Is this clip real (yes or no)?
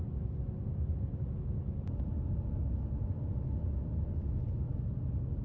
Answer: yes